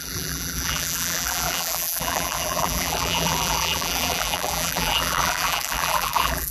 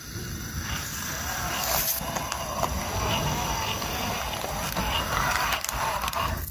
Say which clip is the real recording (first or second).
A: second